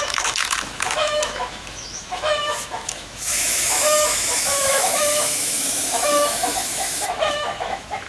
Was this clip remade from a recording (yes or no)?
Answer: yes